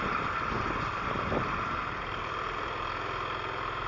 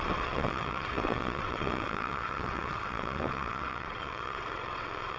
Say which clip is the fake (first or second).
second